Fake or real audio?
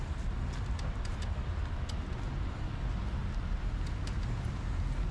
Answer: real